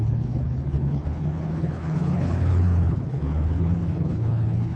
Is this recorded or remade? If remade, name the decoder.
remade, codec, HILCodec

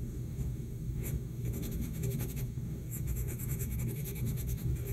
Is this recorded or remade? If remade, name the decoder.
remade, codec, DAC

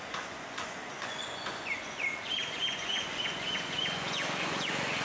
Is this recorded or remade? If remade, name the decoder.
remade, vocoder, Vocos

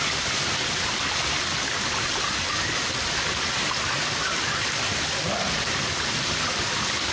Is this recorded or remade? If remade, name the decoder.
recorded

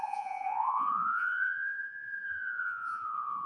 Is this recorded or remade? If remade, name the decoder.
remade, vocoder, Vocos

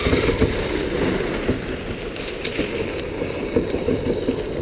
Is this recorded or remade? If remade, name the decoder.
recorded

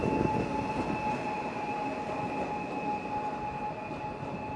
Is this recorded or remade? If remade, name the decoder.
recorded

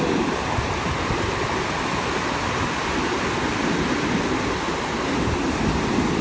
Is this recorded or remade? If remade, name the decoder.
recorded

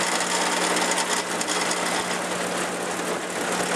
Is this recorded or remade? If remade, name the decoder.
recorded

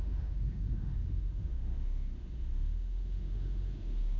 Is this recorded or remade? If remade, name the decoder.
remade, autoencoder, DAC-VAE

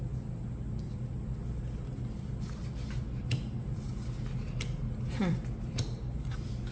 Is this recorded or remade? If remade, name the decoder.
recorded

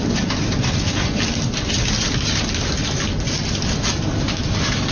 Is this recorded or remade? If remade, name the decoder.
recorded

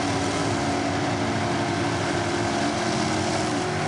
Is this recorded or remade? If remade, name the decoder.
recorded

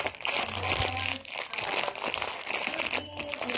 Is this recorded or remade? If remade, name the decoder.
recorded